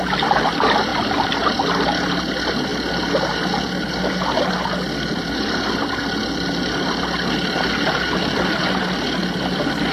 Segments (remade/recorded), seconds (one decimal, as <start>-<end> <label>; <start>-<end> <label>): 0.0-9.9 recorded